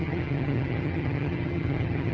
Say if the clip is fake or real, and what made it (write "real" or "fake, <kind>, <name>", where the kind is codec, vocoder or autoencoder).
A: fake, vocoder, HiFi-GAN